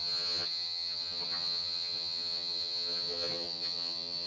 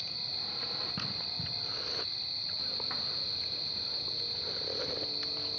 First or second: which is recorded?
second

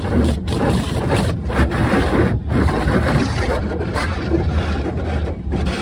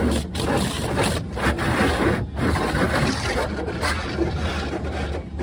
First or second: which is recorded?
second